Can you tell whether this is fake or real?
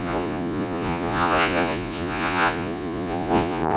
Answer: fake